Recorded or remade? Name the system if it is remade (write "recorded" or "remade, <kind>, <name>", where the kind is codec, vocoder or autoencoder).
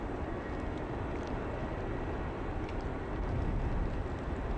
recorded